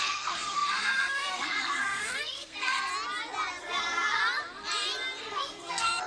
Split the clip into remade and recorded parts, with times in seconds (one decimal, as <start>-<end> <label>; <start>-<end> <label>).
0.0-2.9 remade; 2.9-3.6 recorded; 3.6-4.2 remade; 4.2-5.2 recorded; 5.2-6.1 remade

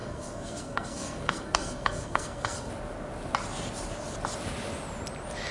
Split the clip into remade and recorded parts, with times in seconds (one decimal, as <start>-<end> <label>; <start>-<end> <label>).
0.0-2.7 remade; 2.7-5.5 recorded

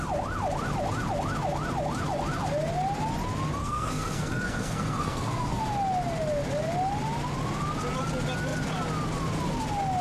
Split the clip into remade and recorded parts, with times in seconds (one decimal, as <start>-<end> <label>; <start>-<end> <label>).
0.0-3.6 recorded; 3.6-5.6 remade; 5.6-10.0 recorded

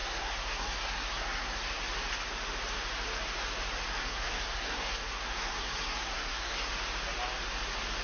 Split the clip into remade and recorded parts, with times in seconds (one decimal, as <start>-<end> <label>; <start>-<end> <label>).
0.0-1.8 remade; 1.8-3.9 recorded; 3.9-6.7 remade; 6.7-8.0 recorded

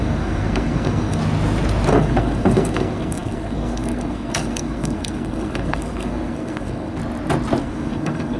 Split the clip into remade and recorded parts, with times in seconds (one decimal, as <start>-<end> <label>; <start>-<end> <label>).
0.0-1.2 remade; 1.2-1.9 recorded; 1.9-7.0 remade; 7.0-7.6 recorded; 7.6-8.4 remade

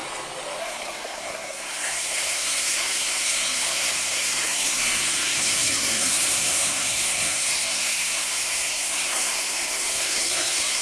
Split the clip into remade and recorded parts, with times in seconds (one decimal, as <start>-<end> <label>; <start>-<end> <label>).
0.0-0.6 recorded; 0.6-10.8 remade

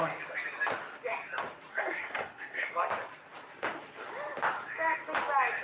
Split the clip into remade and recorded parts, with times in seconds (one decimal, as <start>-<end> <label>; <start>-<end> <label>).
0.0-1.7 recorded; 1.7-2.7 remade; 2.7-5.6 recorded

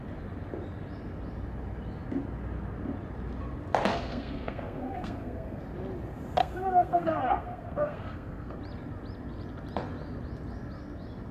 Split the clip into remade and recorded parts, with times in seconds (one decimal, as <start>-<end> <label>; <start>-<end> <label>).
0.0-3.9 recorded; 3.9-5.6 remade; 5.6-6.4 recorded; 6.4-8.6 remade; 8.6-11.3 recorded